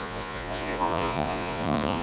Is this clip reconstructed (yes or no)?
yes